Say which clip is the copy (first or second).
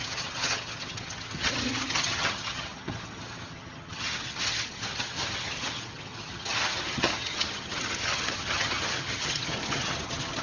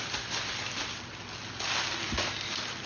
first